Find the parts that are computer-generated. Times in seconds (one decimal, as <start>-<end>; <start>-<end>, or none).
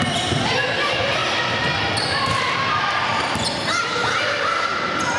0.0-1.2; 2.0-5.2